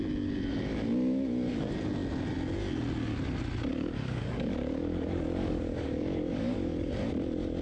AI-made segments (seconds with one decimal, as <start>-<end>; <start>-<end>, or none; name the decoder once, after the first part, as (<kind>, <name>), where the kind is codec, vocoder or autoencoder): 3.7-6.9 (codec, DAC)